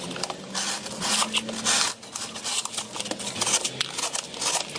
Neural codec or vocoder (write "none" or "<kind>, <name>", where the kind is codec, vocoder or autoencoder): none